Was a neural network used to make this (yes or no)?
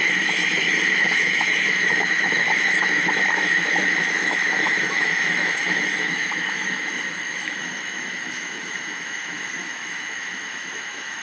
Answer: yes